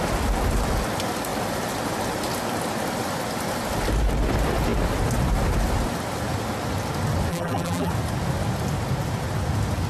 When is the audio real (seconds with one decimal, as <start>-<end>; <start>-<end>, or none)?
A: 0.0-7.3; 7.9-9.9